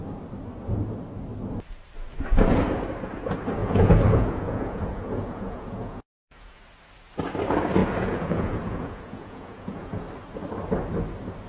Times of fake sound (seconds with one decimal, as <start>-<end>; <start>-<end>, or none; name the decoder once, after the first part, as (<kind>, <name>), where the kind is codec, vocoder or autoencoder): 3.6-6.6 (vocoder, Vocos); 7.8-10.0